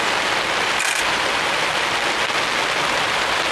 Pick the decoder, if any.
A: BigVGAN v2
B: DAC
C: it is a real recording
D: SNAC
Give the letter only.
C